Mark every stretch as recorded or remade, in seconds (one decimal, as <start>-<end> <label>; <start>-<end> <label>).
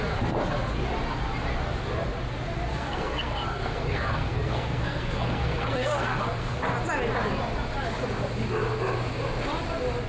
0.0-2.7 recorded; 2.7-6.6 remade; 6.6-10.1 recorded